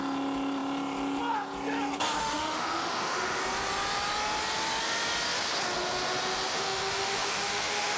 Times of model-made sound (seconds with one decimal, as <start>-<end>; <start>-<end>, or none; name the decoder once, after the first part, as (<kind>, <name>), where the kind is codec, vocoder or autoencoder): 2.2-3.4 (autoencoder, DAC-VAE); 6.5-8.0